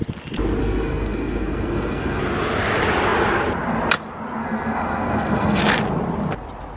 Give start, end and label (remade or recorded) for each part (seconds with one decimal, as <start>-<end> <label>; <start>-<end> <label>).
0.0-0.6 recorded; 0.6-2.2 remade; 2.2-4.4 recorded; 4.4-5.6 remade; 5.6-6.8 recorded